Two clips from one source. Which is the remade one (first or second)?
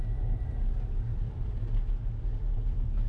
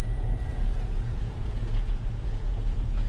second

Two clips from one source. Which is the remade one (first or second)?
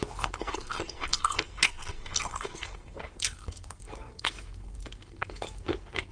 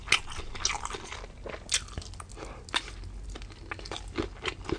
first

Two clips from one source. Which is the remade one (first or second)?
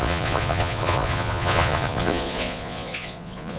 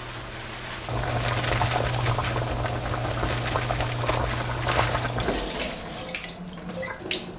first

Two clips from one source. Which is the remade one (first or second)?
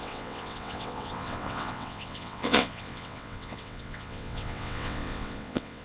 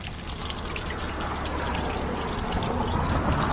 first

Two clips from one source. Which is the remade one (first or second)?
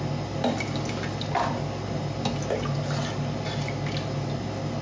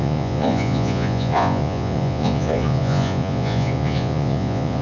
second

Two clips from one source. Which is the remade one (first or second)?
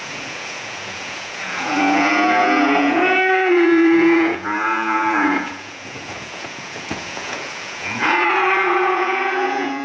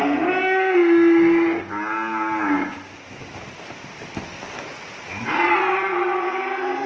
first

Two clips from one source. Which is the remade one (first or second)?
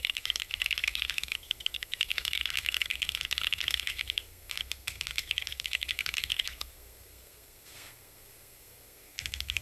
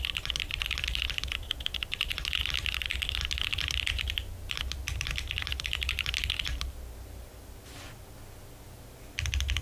first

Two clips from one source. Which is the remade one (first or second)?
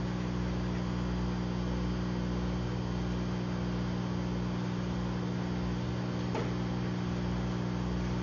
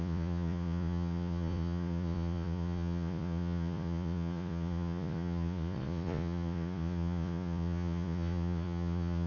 second